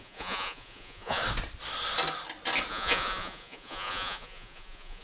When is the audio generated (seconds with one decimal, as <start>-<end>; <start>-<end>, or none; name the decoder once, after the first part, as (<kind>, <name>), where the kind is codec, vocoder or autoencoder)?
0.0-1.2 (vocoder, Vocos); 2.7-5.0